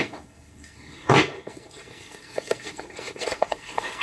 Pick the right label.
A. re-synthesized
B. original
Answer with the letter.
A